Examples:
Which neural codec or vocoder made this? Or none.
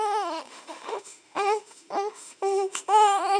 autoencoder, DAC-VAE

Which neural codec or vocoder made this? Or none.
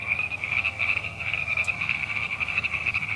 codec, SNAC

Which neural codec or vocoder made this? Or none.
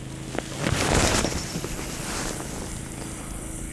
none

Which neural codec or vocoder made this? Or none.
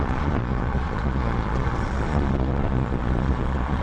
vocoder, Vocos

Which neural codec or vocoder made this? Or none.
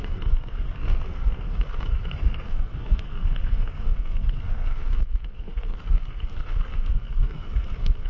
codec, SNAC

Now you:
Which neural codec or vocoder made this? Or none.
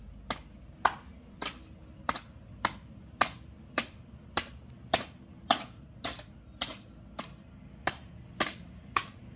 none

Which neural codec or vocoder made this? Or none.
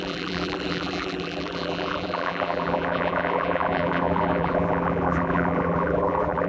vocoder, BigVGAN v2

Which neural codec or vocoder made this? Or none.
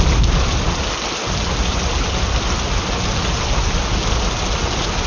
none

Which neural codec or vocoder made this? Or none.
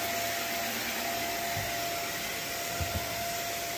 none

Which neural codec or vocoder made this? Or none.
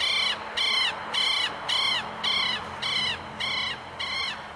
none